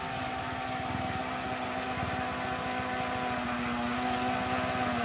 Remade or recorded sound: recorded